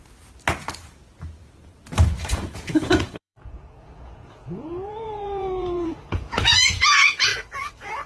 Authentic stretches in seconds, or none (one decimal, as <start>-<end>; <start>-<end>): 0.0-2.2